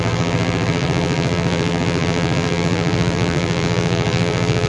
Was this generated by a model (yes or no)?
yes